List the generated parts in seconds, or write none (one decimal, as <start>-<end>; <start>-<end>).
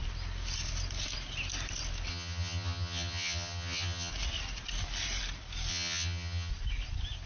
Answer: 2.1-4.1; 5.7-6.5